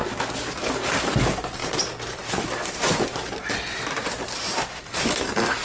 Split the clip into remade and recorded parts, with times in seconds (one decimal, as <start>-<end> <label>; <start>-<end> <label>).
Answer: 0.0-5.6 recorded